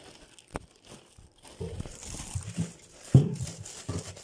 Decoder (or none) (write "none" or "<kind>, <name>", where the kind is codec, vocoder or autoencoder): none